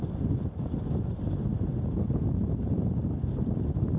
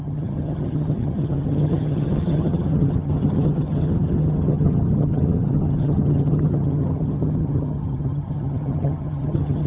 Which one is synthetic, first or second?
second